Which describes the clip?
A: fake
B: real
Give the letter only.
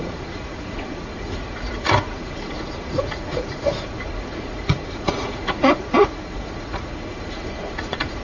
A